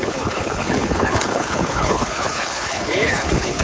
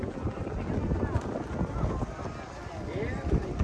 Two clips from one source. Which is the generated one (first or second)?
first